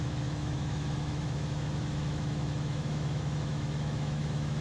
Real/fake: fake